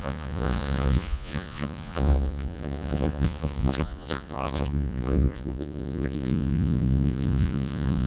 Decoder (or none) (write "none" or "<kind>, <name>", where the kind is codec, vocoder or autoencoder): vocoder, Vocos